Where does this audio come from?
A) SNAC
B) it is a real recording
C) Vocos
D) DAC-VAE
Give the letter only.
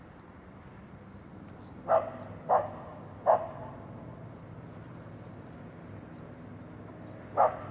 B